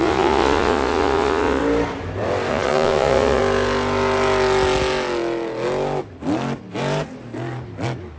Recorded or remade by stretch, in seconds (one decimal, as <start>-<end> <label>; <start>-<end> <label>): 0.0-1.6 remade; 1.6-2.5 recorded; 2.5-3.4 remade; 3.4-8.2 recorded